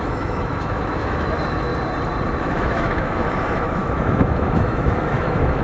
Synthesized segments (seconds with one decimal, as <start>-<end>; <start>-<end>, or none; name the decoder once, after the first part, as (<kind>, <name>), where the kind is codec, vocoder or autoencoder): 0.0-1.7 (autoencoder, DAC-VAE); 2.4-5.6